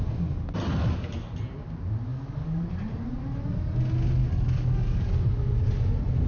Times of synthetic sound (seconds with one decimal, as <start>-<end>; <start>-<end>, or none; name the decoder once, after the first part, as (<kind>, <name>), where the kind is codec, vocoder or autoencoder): 2.1-2.7 (codec, DAC); 4.2-5.7